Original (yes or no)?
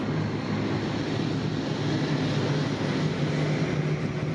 yes